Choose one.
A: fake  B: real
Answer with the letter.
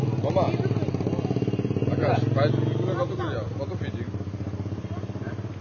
B